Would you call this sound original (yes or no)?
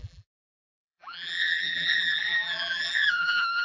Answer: no